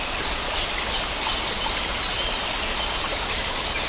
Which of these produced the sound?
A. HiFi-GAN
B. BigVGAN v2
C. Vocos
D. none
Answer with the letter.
D